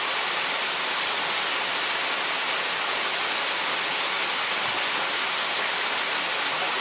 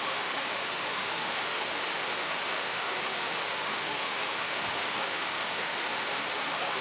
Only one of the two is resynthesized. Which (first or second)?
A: second